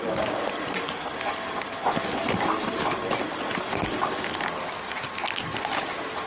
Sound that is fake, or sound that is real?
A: real